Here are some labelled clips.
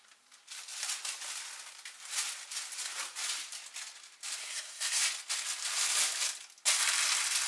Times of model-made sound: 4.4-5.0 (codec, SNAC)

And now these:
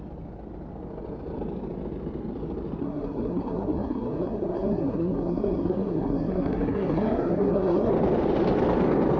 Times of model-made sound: 2.8-7.9 (codec, SNAC)

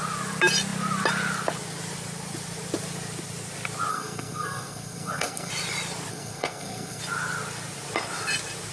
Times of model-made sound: 3.9-5.5 (codec, SNAC); 6.1-7.0

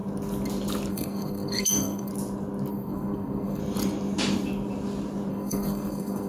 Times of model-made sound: 0.9-2.1 (codec, SNAC); 2.7-3.6; 5.3-6.3

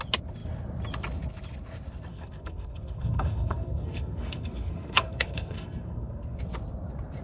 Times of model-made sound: 2.1-6.4 (codec, SNAC)

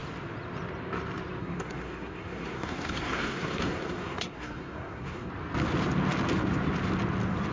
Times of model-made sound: 1.4-5.3 (codec, SNAC)

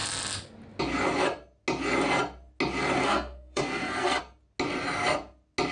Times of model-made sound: 3.0-4.2 (codec, SNAC)

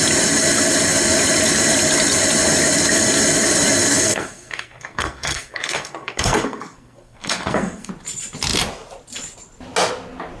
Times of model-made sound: 3.9-7.9 (codec, SNAC)